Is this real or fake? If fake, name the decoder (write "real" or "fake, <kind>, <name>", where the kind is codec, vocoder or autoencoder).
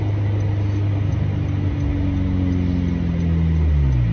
real